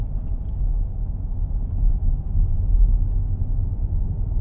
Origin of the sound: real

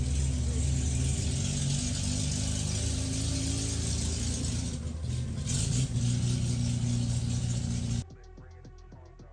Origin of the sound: real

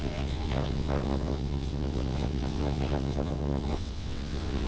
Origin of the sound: fake